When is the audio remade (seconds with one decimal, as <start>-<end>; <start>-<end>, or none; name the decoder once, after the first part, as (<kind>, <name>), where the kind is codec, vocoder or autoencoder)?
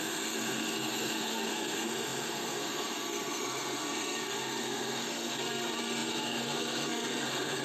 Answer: 0.0-7.6 (codec, SNAC)